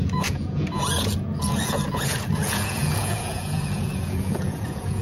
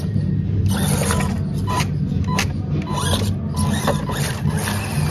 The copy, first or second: first